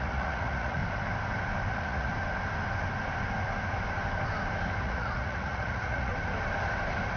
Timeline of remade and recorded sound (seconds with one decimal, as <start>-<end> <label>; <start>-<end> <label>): 0.0-0.8 remade; 0.8-1.7 recorded; 1.7-2.1 remade; 2.1-4.8 recorded; 4.8-6.1 remade; 6.1-7.2 recorded